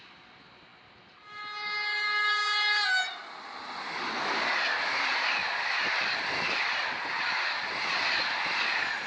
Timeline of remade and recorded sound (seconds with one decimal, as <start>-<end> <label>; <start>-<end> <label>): 0.0-5.4 recorded; 5.4-7.9 remade; 7.9-9.1 recorded